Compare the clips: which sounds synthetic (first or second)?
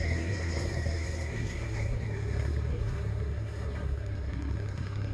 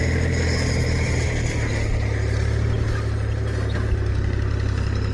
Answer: first